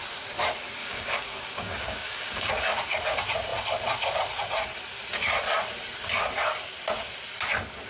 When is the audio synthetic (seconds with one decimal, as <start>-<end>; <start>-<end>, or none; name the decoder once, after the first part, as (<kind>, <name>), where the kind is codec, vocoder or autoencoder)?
0.8-2.5 (codec, DAC)